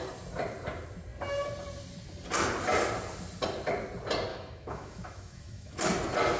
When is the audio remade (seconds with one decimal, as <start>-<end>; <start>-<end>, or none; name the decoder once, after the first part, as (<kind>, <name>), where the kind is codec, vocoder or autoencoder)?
4.3-5.7 (autoencoder, DAC-VAE)